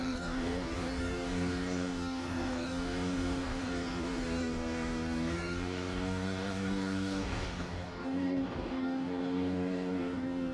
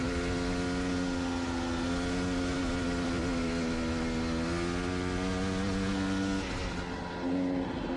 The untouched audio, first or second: second